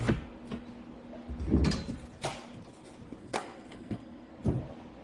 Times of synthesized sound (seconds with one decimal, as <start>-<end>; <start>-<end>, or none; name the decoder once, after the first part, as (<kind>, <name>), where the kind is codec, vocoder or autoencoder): 3.2-4.3 (codec, SNAC)